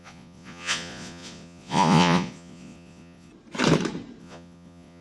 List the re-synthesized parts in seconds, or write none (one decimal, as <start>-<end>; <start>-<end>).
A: 0.0-3.3; 4.2-5.0